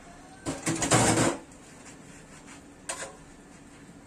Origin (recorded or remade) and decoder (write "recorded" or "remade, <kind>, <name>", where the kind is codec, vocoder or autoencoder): recorded